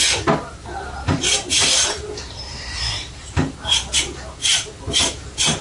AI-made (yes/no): yes